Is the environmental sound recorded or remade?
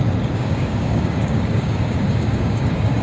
remade